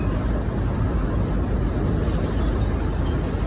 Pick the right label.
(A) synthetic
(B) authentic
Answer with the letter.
B